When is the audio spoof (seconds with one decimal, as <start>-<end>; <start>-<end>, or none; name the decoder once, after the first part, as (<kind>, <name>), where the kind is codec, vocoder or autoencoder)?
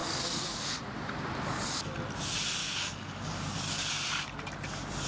0.0-0.6 (codec, DAC); 2.6-3.9